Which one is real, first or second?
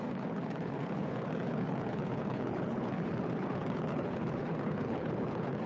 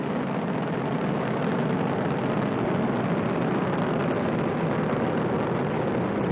second